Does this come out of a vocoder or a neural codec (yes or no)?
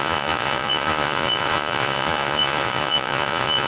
yes